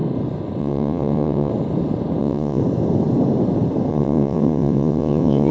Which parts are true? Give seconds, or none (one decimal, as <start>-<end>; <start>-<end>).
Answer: 0.0-0.6; 1.5-2.2; 2.6-3.9